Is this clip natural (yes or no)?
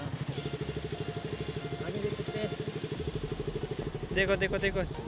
yes